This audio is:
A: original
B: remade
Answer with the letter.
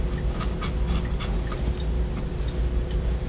A